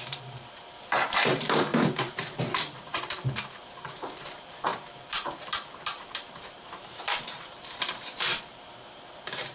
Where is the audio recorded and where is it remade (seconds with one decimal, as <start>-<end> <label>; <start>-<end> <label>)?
0.0-9.5 remade